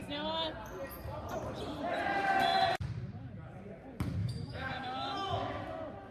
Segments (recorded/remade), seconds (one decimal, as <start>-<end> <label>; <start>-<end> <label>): 0.0-4.2 recorded; 4.2-5.6 remade; 5.6-6.1 recorded